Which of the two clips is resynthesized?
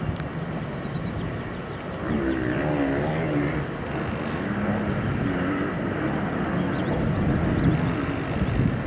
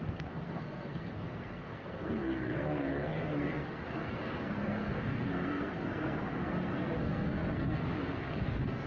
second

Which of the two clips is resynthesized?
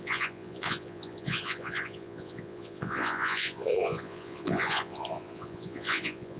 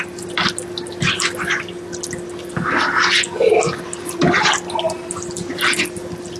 first